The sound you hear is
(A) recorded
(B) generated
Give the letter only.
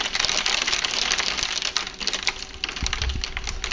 A